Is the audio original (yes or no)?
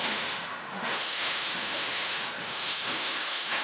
no